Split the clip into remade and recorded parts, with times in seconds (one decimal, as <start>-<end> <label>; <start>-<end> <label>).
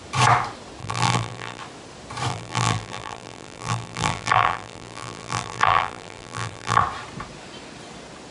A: 0.0-0.8 recorded; 0.8-1.6 remade; 1.6-2.3 recorded; 2.3-6.8 remade; 6.8-8.3 recorded